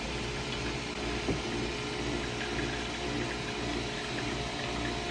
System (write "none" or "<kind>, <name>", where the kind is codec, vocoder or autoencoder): none